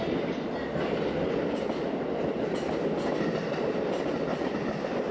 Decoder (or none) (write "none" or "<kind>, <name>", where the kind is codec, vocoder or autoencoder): none